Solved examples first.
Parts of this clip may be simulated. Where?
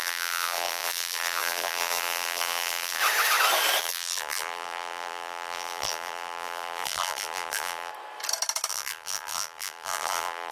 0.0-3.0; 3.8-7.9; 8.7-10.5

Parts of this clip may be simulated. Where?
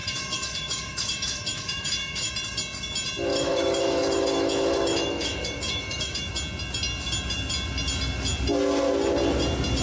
0.0-2.3; 3.3-6.3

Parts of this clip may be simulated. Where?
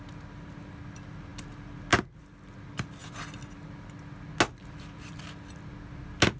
none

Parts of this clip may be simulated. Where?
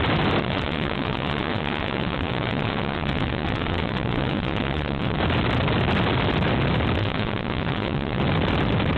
0.4-5.2; 7.0-8.2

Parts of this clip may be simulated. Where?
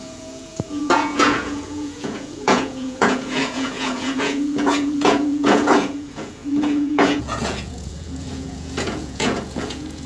0.0-10.1